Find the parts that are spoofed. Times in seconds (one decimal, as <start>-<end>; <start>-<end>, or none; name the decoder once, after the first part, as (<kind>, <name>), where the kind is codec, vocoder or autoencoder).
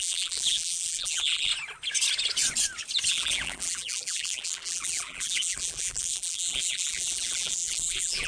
0.0-1.5 (vocoder, BigVGAN v2); 3.1-8.3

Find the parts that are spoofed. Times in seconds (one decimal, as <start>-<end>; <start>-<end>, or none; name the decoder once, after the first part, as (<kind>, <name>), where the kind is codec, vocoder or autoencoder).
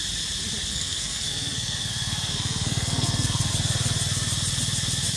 0.7-3.5 (codec, SNAC)